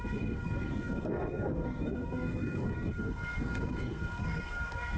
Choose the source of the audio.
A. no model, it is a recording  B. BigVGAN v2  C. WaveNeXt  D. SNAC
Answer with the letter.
D